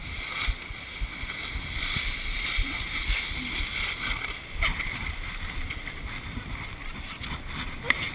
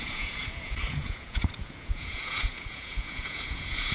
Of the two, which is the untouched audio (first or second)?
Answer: first